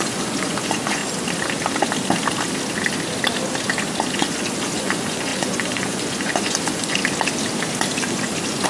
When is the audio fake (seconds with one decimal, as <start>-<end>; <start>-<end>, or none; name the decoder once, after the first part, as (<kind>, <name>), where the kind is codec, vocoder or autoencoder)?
0.0-1.0 (vocoder, Vocos); 4.1-7.0; 8.1-8.7